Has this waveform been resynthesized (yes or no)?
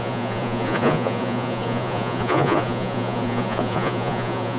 yes